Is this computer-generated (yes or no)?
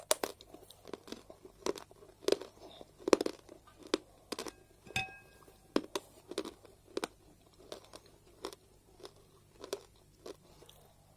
no